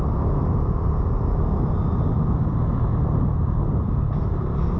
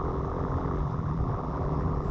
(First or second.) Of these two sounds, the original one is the first